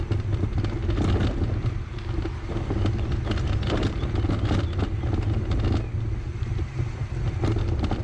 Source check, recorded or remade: recorded